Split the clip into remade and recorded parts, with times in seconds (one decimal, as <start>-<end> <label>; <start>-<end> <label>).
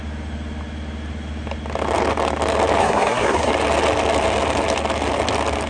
0.0-2.8 recorded; 2.8-3.5 remade; 3.5-5.7 recorded